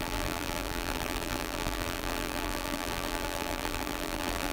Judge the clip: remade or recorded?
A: remade